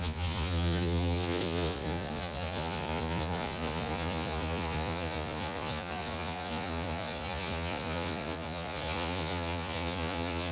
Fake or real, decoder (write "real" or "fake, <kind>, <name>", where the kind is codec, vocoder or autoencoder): fake, vocoder, Vocos